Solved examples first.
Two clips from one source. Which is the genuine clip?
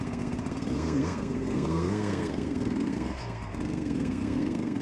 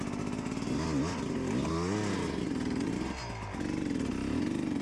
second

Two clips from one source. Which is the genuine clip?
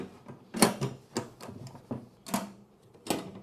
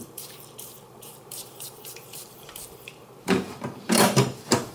first